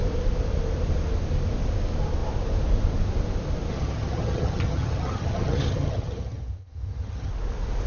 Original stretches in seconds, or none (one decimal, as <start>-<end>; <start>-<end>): 0.0-3.7; 7.3-7.9